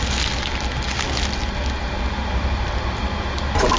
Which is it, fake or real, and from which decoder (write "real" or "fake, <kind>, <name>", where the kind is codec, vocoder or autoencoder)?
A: real